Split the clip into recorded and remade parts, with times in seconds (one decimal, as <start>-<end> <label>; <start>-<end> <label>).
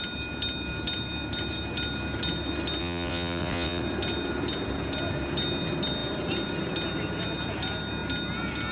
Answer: 0.0-2.8 recorded; 2.8-3.8 remade; 3.8-8.7 recorded